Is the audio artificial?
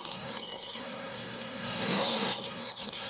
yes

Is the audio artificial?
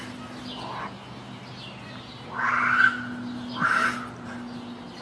no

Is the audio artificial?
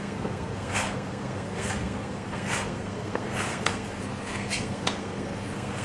yes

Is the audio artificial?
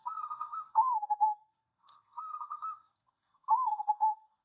yes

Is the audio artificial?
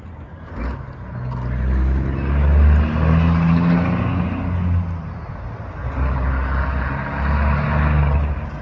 no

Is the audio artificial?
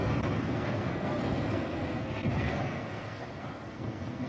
yes